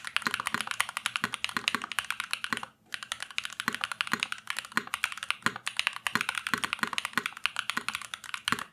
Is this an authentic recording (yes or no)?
yes